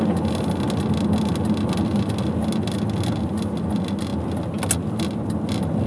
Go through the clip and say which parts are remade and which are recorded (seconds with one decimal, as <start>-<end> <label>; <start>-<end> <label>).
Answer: 0.0-5.9 recorded